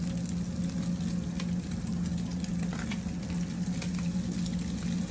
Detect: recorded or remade recorded